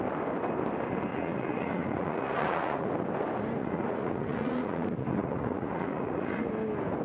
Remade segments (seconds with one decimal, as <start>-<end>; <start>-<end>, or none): 1.1-2.9; 3.6-6.5